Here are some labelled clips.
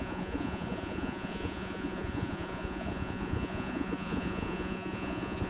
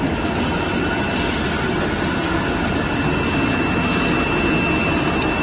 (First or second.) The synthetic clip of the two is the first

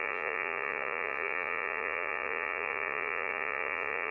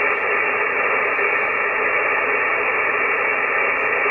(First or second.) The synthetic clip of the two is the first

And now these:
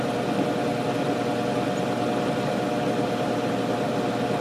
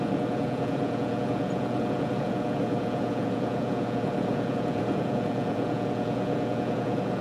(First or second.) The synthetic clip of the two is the second